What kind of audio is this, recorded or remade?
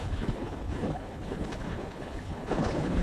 remade